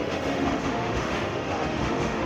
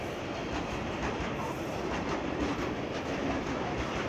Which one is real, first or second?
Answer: second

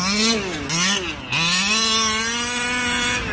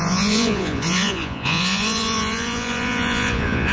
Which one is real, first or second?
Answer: first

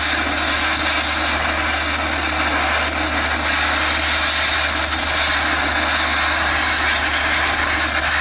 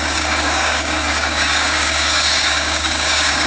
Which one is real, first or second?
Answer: first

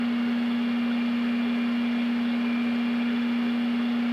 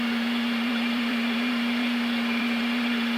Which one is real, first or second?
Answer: first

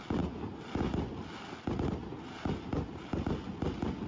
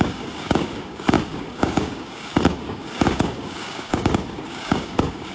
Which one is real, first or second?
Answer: first